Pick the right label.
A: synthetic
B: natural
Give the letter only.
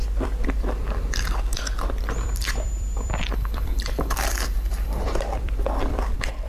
A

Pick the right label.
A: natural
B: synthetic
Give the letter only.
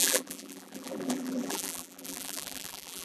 B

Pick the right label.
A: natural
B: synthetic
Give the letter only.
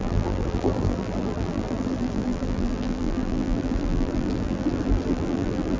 B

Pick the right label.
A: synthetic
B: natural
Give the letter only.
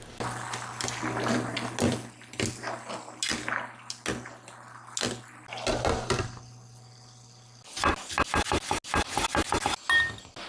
B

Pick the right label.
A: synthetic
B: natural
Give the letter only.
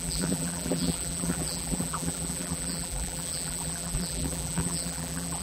A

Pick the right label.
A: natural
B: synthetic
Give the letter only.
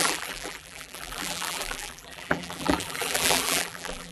B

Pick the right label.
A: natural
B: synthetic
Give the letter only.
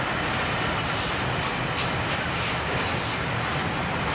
A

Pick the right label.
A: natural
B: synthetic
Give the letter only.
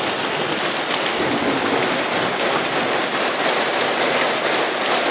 A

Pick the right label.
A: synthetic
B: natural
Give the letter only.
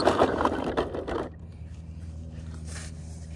A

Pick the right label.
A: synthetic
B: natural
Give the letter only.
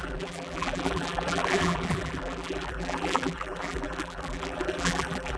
A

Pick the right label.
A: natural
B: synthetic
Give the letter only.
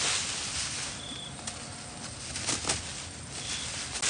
A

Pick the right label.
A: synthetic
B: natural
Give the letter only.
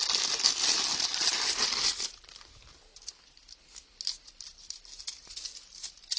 B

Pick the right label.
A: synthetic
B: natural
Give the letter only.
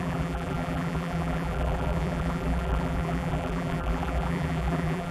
A